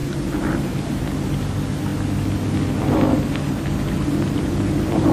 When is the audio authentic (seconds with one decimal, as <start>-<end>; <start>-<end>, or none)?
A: 1.4-5.1